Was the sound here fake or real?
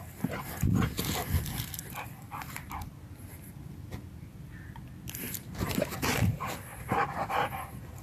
real